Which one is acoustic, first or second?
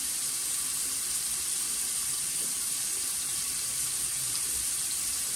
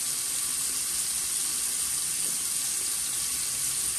second